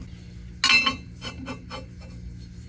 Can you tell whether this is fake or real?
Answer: real